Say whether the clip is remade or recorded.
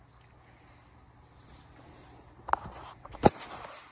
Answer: recorded